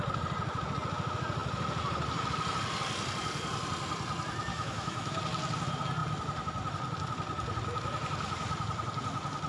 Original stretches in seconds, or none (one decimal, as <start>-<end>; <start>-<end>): 0.0-4.5; 5.2-9.5